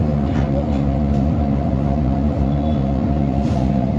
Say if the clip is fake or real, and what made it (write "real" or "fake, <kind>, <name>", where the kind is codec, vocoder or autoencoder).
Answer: fake, vocoder, Vocos